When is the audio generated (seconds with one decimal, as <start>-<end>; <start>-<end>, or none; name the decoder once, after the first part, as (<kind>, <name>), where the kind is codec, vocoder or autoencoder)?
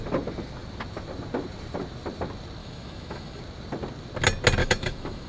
2.6-3.4 (autoencoder, DAC-VAE); 4.6-5.3